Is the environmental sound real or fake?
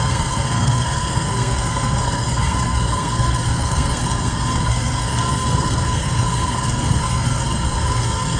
fake